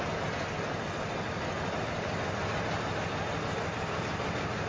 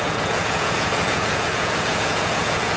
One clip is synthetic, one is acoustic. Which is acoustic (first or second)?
first